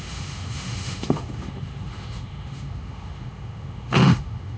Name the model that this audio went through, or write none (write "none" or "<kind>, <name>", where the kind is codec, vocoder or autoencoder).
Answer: autoencoder, DAC-VAE